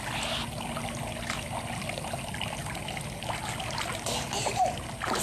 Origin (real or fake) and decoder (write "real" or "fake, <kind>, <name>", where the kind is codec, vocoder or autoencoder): real